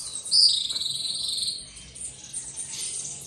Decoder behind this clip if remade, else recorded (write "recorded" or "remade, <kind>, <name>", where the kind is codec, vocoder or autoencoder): recorded